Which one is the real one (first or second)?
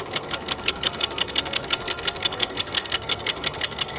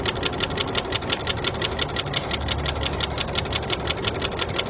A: second